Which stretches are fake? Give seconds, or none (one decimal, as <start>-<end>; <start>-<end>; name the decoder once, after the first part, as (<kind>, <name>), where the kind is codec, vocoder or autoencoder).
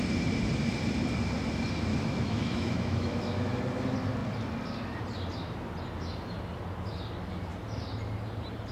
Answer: 1.9-3.6 (autoencoder, DAC-VAE)